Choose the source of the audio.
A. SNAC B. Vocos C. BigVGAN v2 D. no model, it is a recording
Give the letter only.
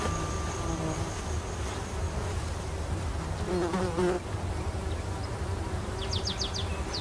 D